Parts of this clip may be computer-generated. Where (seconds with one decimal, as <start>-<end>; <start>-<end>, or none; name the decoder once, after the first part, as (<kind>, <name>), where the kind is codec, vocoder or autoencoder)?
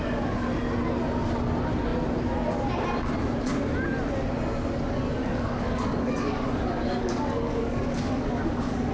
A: 5.2-8.9 (codec, DAC)